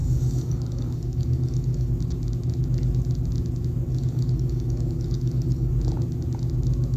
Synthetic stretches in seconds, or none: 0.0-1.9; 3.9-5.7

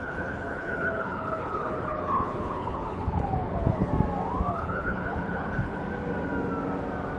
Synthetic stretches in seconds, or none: 0.0-3.9; 4.5-5.8

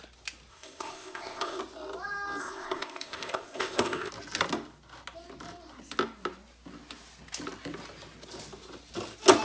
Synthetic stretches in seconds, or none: 0.5-1.6; 2.4-4.1

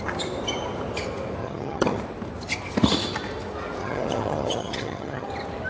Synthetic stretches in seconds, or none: 1.4-2.0; 3.8-5.3

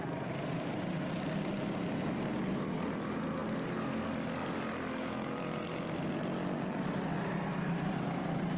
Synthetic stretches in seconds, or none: none

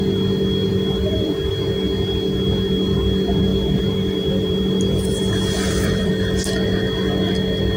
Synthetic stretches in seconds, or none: 0.7-1.5; 3.5-6.1

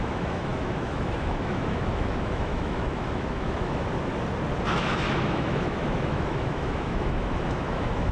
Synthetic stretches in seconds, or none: 0.0-4.1; 4.7-8.1

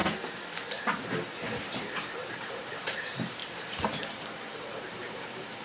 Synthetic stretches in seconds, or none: 1.6-5.6